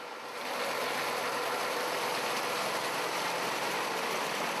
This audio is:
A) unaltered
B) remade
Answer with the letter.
A